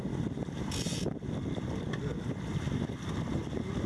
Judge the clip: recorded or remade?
recorded